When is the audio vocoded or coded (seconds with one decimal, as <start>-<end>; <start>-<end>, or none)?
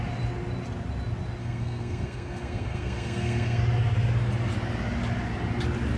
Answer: 1.4-3.6